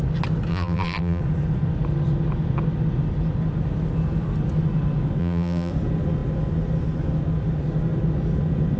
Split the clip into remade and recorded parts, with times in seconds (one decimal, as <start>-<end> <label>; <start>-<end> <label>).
0.0-0.5 recorded; 0.5-1.2 remade; 1.2-5.2 recorded; 5.2-5.7 remade; 5.7-8.8 recorded